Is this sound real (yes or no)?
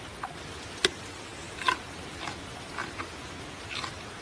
yes